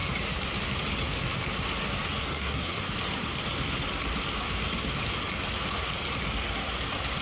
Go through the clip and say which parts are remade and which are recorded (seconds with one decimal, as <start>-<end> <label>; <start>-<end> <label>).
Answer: 0.0-2.3 recorded; 2.3-2.8 remade; 2.8-7.2 recorded